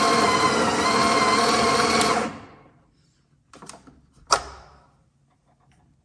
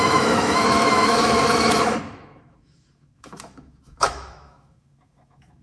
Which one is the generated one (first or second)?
second